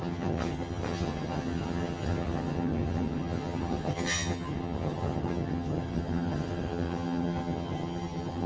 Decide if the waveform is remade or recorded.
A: remade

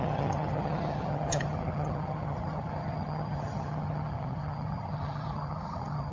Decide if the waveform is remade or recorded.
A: remade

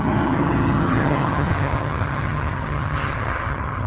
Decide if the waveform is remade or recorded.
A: remade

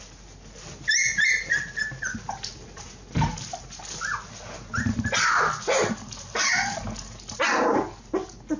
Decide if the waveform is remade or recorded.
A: recorded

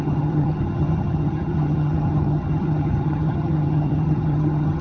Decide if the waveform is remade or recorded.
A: remade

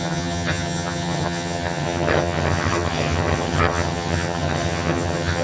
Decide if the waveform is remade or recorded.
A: remade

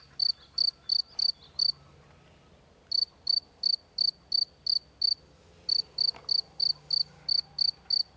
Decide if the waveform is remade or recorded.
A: recorded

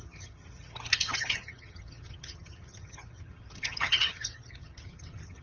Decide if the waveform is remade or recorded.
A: remade